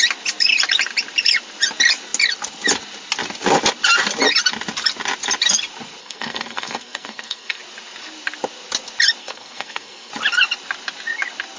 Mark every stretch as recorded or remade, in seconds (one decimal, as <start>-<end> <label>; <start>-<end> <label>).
0.0-6.0 recorded; 6.0-7.6 remade; 7.6-9.2 recorded; 9.2-10.1 remade; 10.1-11.6 recorded